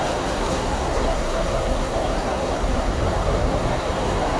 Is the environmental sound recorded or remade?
remade